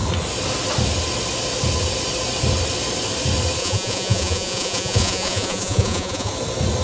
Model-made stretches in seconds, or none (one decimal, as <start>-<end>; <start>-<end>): 3.6-6.3